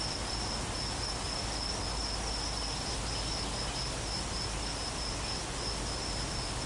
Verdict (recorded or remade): recorded